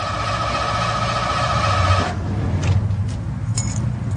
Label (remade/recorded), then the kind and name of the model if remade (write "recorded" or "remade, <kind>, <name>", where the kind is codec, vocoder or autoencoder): recorded